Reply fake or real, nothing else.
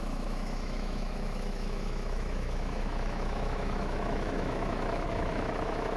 fake